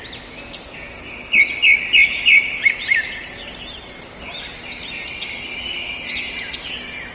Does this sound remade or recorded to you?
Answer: recorded